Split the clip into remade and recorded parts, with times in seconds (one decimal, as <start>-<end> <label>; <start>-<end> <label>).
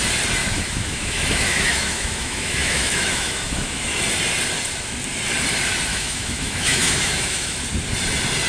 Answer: 0.0-0.4 recorded; 0.4-4.0 remade; 4.0-5.9 recorded; 5.9-7.6 remade; 7.6-8.5 recorded